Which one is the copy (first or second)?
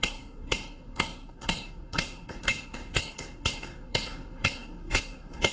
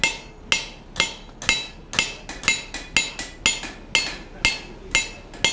first